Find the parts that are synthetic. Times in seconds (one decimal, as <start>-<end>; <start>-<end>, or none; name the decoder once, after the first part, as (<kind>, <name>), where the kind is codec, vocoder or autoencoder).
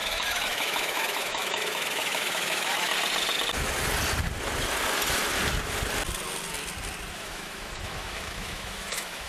0.0-2.9 (autoencoder, DAC-VAE); 7.1-9.3